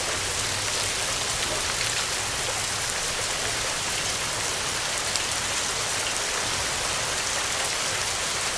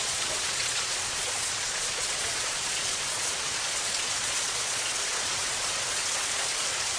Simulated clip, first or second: second